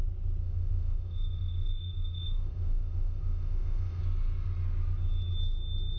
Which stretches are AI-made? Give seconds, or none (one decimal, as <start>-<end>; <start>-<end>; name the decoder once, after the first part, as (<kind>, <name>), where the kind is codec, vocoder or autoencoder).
0.4-4.0 (autoencoder, DAC-VAE)